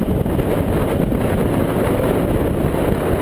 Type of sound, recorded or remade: recorded